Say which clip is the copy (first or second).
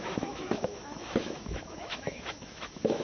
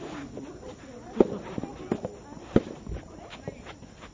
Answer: first